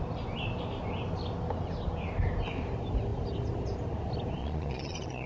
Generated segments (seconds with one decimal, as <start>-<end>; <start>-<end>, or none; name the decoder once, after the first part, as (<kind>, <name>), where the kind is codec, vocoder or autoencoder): 4.4-5.3 (vocoder, Vocos)

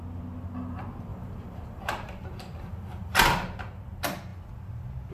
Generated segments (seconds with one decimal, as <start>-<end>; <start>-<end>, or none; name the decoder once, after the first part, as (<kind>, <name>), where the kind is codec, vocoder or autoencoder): 1.1-3.2 (vocoder, BigVGAN v2)

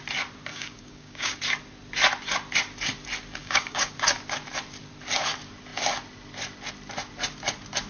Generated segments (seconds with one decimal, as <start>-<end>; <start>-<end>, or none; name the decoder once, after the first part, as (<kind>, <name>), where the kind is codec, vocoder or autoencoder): 0.5-1.4 (codec, DAC); 3.4-3.9

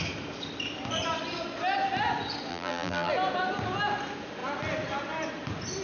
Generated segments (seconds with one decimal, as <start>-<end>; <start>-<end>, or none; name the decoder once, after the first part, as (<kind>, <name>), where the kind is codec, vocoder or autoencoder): 2.5-3.1 (vocoder, BigVGAN v2)